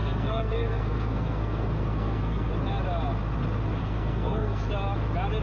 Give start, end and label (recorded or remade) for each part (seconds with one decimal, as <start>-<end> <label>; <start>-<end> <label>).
0.0-2.5 remade; 2.5-3.8 recorded; 3.8-4.7 remade; 4.7-5.4 recorded